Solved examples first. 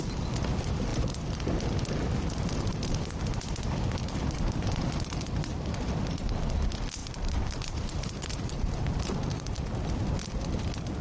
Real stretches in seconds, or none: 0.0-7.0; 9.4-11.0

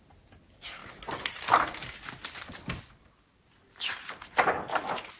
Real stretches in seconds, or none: 0.0-5.2